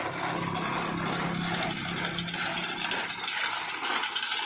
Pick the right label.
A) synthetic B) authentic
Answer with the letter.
B